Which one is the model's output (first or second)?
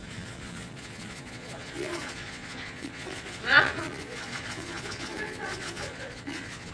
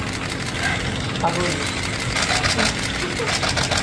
first